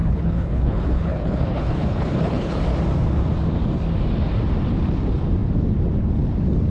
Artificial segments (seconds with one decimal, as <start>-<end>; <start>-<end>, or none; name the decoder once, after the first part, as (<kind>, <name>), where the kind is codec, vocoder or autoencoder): 0.0-2.6 (codec, HILCodec)